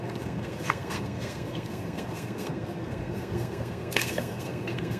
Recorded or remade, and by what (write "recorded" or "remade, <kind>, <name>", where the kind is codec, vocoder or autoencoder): remade, codec, SNAC